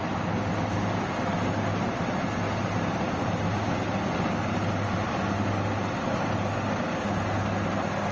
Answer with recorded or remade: recorded